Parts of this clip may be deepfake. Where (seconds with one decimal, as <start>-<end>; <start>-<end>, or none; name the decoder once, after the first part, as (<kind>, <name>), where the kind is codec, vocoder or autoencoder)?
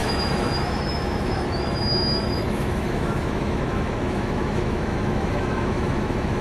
0.0-6.4 (autoencoder, DAC-VAE)